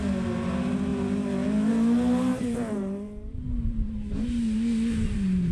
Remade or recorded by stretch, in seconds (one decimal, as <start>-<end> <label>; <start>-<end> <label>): 0.0-2.3 recorded; 2.3-5.5 remade